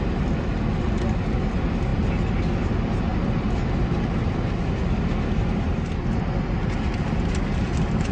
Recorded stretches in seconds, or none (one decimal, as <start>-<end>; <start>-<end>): 0.0-8.1